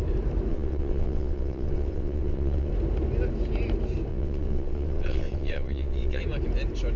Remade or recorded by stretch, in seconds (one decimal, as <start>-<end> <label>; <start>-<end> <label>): 0.0-0.5 recorded; 0.5-2.7 remade; 2.7-4.1 recorded; 4.1-6.2 remade; 6.2-7.0 recorded